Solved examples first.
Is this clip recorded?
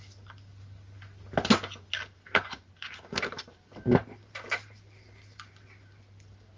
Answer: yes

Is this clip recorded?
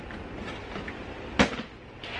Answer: yes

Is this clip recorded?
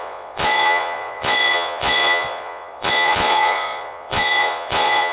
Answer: no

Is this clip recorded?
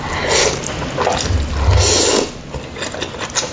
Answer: yes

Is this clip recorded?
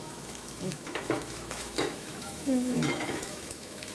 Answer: no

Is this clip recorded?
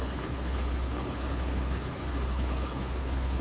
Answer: no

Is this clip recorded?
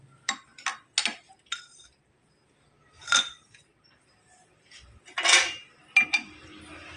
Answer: yes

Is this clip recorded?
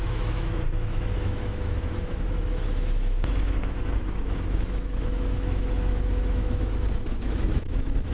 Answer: no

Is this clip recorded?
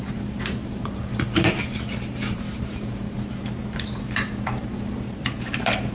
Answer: no